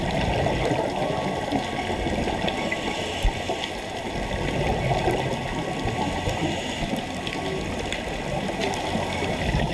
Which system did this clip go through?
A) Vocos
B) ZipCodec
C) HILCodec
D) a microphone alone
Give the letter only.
D